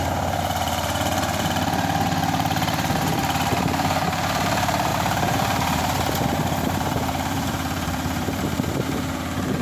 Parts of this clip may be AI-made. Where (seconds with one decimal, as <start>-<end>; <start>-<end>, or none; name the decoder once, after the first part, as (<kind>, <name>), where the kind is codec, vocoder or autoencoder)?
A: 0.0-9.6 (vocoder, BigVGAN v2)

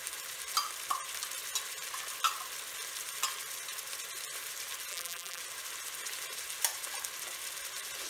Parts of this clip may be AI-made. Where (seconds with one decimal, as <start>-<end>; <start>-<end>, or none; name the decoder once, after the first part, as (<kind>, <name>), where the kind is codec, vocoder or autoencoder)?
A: 4.9-5.4 (vocoder, BigVGAN v2)

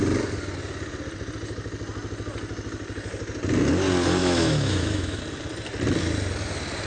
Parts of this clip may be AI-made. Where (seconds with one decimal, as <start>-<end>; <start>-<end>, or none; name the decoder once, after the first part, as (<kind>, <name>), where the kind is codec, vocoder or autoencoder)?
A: 4.2-5.2 (autoencoder, DAC-VAE)

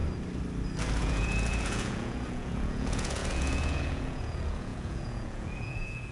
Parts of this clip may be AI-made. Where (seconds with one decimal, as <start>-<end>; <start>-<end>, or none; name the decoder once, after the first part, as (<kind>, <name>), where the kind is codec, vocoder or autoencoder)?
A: 1.0-6.1 (vocoder, Vocos)

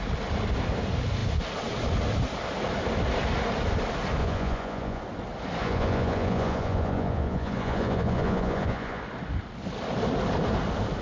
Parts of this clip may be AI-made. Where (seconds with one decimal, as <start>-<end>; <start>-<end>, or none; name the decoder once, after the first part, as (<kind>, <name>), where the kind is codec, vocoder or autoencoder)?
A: 4.2-5.0 (vocoder, Vocos); 5.6-9.0

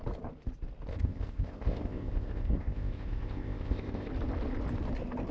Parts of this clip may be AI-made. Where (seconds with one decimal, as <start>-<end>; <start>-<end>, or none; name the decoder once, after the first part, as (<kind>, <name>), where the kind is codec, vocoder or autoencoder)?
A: 0.9-4.1 (codec, ZipCodec)